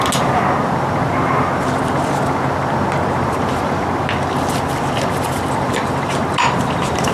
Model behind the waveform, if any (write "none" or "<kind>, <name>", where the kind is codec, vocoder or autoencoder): none